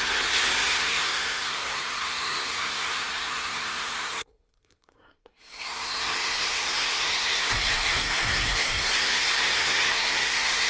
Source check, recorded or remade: remade